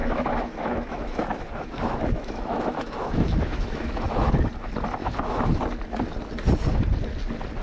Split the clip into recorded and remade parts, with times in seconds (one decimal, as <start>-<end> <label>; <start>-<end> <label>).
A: 0.0-4.3 remade; 4.3-5.0 recorded; 5.0-5.6 remade; 5.6-7.6 recorded